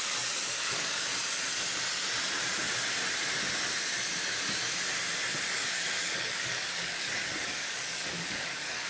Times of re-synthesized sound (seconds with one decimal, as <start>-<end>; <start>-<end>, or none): 0.0-1.1; 5.5-8.9